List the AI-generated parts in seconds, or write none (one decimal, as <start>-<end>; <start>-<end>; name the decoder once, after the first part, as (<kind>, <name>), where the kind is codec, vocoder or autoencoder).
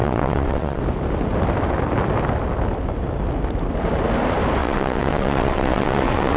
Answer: 0.0-0.8 (vocoder, WaveNeXt); 4.6-6.4